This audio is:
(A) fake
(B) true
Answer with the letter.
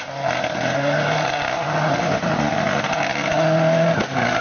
B